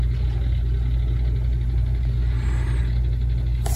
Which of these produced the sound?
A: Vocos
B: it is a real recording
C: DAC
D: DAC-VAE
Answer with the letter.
B